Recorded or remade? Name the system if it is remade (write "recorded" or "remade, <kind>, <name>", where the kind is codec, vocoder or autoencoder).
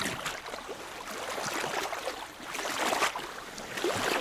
recorded